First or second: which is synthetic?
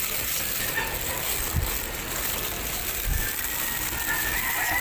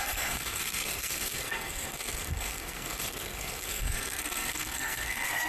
second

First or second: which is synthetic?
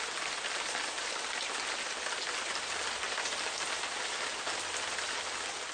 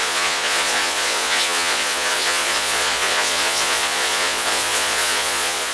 second